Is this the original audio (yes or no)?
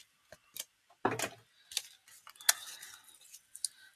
yes